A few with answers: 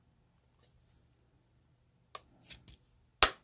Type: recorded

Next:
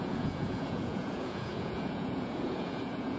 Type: remade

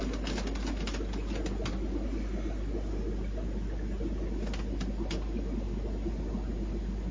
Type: recorded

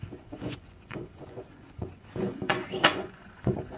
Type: remade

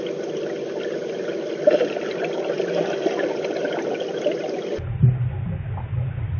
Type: recorded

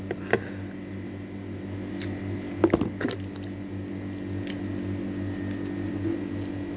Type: recorded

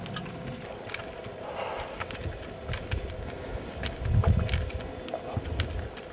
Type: recorded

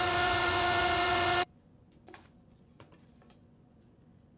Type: remade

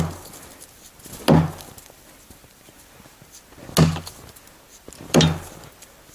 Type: recorded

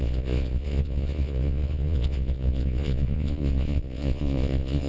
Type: remade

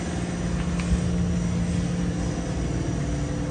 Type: recorded